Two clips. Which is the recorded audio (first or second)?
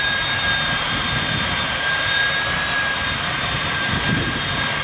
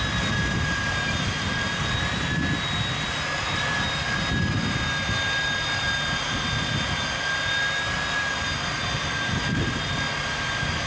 second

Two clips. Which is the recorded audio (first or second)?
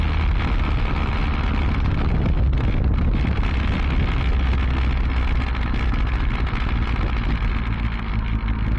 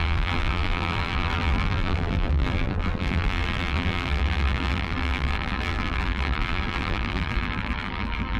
first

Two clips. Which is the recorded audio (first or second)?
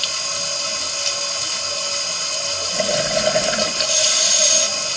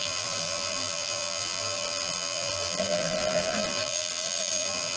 first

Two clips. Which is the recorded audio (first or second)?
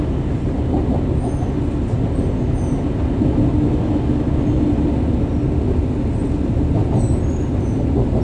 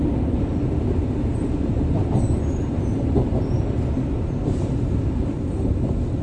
first